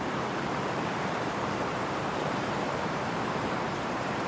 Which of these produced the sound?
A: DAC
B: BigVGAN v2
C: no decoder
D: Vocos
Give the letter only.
B